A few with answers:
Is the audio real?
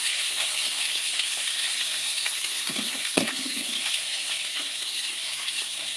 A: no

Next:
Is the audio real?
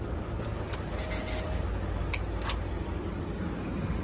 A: yes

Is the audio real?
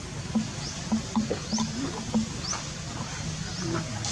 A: yes